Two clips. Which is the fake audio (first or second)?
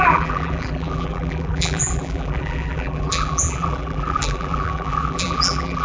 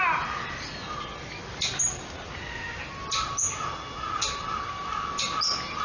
first